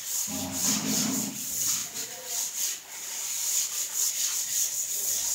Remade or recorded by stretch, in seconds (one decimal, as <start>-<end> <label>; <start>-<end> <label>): 0.0-5.3 recorded